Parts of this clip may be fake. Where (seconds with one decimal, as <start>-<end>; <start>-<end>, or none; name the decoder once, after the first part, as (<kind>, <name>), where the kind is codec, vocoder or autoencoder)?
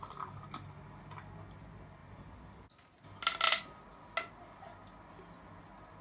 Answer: none